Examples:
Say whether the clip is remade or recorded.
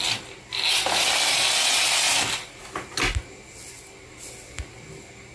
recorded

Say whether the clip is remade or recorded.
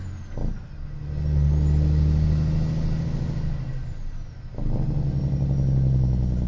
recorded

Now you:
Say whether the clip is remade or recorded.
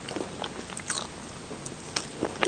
recorded